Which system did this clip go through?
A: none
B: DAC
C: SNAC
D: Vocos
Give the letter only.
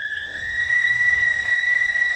B